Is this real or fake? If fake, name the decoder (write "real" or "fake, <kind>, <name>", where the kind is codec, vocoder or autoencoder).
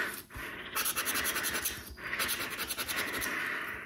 real